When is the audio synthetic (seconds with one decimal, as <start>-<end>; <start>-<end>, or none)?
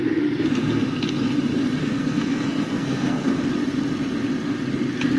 1.8-3.4